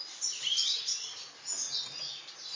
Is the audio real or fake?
real